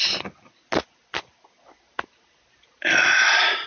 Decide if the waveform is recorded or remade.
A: recorded